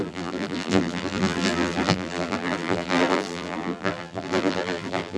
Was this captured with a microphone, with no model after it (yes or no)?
no